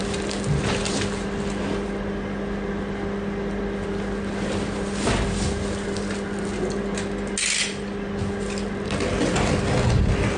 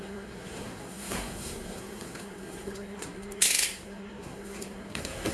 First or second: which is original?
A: first